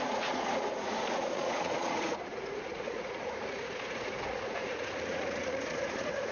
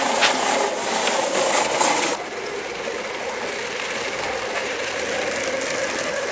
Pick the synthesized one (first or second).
first